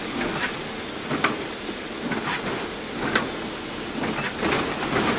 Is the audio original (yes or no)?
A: yes